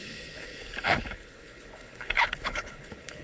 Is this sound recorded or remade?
remade